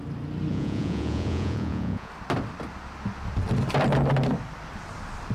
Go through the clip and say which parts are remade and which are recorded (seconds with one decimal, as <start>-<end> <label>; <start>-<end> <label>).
0.0-0.5 recorded; 0.5-2.1 remade; 2.1-5.3 recorded